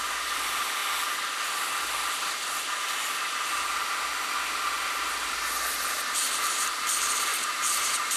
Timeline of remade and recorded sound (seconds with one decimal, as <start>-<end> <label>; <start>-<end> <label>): 0.0-0.8 remade; 0.8-2.1 recorded; 2.1-3.8 remade; 3.8-5.1 recorded; 5.1-8.2 remade